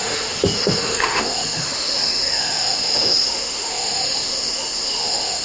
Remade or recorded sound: remade